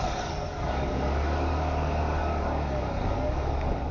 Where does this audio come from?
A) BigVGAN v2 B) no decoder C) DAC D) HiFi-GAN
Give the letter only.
C